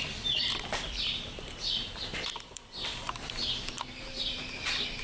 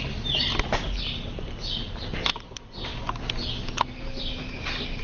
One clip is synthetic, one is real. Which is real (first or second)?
second